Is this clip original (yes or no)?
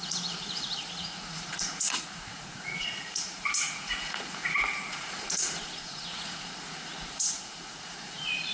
no